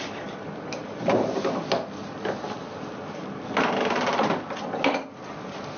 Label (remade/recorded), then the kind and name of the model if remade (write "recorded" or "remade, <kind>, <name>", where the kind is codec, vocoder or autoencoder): recorded